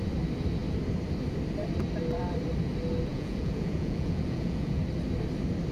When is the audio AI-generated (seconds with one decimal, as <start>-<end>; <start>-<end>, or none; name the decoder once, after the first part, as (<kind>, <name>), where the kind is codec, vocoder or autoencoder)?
3.1-4.8 (vocoder, Vocos)